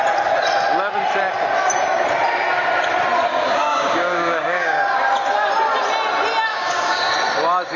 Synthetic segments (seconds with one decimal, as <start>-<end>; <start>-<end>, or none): 3.3-4.8; 6.5-7.1